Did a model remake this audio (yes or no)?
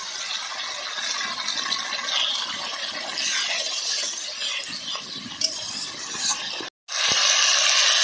no